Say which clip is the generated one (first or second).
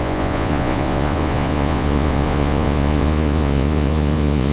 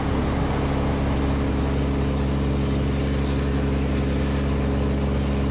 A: first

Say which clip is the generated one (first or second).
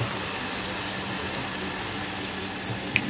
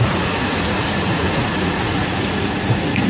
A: second